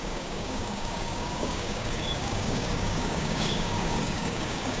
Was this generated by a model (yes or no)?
yes